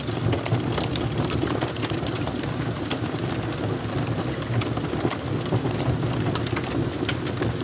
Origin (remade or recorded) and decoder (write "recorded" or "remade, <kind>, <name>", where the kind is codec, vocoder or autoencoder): recorded